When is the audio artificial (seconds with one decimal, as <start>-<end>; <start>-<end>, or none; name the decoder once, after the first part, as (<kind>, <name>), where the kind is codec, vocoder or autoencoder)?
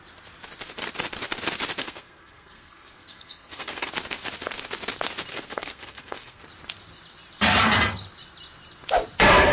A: 1.8-3.9 (codec, SNAC); 5.3-6.4